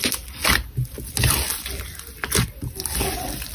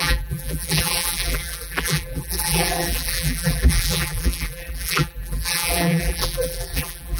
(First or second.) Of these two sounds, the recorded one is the first